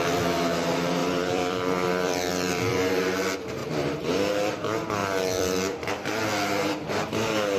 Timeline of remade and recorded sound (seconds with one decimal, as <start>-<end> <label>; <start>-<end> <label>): 0.0-1.0 recorded; 1.0-3.0 remade; 3.0-5.0 recorded; 5.0-5.9 remade; 5.9-7.6 recorded